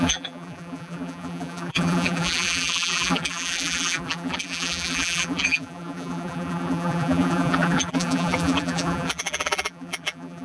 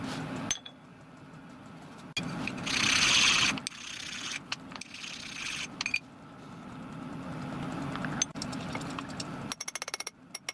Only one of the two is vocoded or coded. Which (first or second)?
first